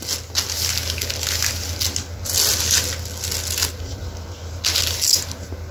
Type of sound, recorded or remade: recorded